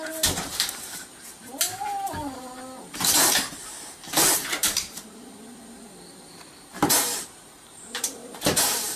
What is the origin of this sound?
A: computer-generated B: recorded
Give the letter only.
A